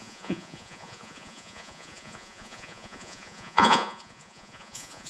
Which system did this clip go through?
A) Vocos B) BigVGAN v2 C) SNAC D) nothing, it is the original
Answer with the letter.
A